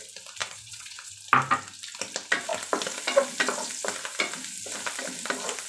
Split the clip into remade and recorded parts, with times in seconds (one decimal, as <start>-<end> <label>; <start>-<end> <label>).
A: 0.0-0.4 recorded; 0.4-1.1 remade; 1.1-5.7 recorded